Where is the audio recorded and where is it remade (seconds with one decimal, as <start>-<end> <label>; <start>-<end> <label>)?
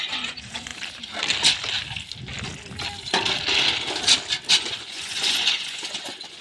0.0-0.7 remade; 0.7-4.5 recorded; 4.5-6.4 remade